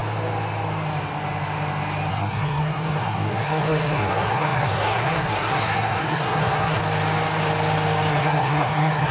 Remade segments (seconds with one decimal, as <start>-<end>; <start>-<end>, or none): 2.1-6.8; 8.1-9.1